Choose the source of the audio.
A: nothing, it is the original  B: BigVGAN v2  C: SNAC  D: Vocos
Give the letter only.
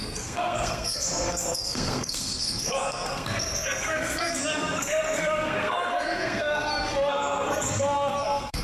C